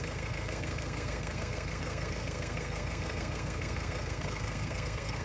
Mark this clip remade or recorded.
remade